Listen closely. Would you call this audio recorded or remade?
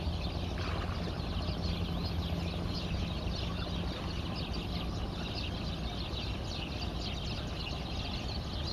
recorded